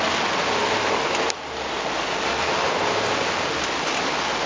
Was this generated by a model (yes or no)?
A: no